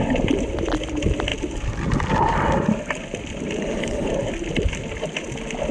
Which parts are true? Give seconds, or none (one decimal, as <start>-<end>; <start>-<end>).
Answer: 0.0-3.6; 4.1-5.7